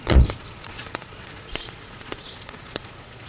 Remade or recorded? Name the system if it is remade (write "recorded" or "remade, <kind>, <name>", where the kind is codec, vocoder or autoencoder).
remade, vocoder, Vocos